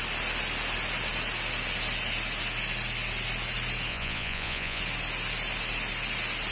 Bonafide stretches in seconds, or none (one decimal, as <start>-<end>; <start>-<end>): 0.0-3.9; 4.8-6.5